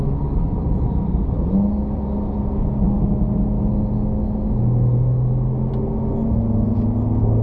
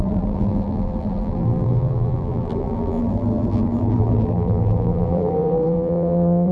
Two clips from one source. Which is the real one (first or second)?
first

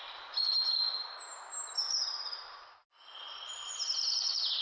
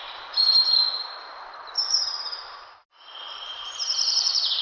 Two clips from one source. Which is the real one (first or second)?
first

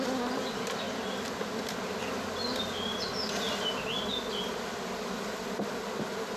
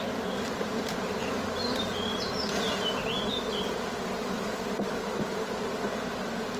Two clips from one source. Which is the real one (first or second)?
first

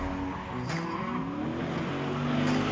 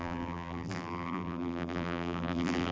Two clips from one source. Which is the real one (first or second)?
first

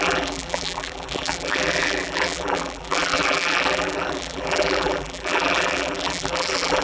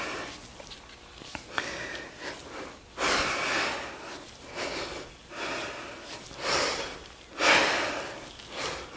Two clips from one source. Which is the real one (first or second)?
second